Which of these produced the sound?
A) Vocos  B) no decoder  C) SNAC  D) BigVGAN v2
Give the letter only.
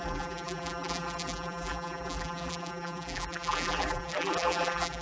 D